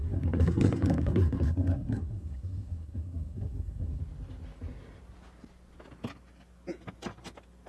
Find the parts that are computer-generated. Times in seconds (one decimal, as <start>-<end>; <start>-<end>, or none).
0.0-4.0